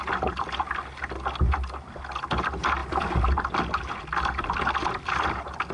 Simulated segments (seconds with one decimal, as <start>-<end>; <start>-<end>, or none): none